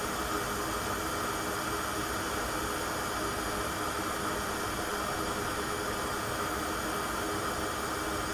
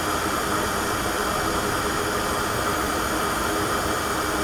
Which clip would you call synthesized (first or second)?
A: second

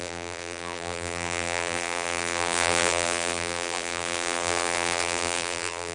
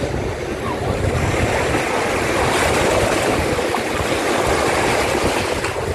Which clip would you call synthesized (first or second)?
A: first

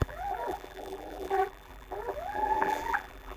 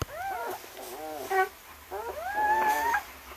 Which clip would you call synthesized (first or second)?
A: first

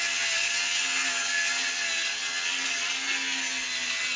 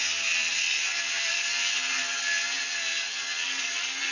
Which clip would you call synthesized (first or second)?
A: second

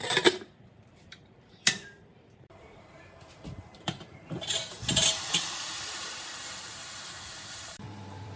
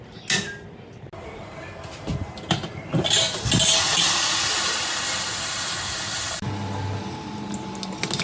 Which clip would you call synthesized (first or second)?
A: first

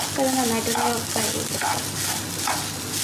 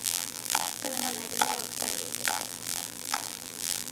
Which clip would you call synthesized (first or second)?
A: second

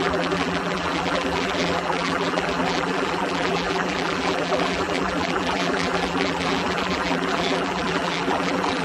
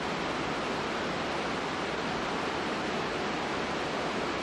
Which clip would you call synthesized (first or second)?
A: first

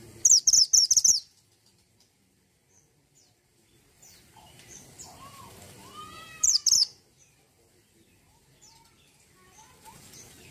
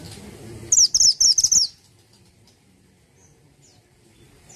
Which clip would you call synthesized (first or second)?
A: first